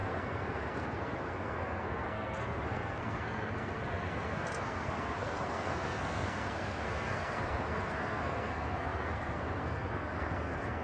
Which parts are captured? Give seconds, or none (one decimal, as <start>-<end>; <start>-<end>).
none